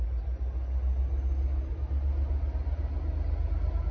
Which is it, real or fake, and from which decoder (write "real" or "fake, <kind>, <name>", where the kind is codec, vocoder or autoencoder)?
real